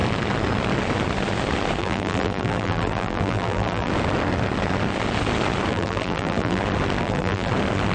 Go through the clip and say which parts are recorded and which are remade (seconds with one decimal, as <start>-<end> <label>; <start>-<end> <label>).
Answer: 0.0-1.8 recorded; 1.8-3.9 remade; 3.9-5.7 recorded; 5.7-6.6 remade; 6.6-7.0 recorded; 7.0-7.5 remade; 7.5-7.9 recorded

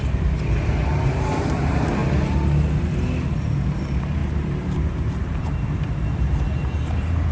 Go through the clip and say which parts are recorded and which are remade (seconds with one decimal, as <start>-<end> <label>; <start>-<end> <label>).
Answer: 0.0-2.0 remade; 2.0-3.8 recorded; 3.8-7.3 remade